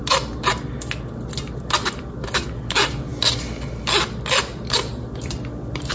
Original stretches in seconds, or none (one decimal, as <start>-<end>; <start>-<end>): 0.0-5.9